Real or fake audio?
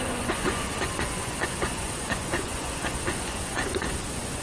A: fake